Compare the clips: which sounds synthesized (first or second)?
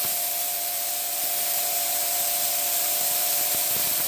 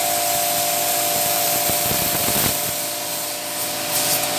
first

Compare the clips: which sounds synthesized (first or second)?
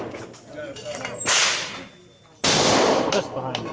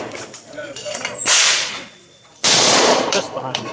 second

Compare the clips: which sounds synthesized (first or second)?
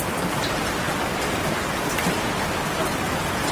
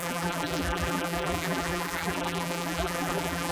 second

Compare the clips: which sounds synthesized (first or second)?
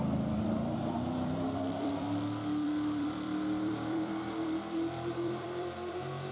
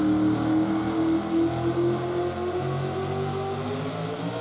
first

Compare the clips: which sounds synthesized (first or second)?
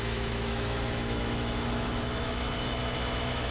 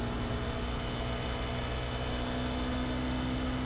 first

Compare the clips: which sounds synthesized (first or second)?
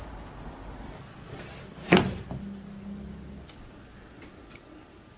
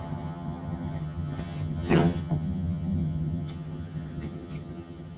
second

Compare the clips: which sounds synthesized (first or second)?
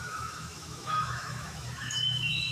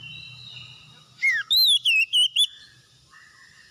first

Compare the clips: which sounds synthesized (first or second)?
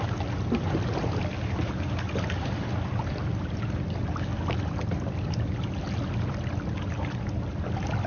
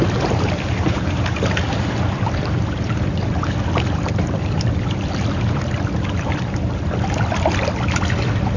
second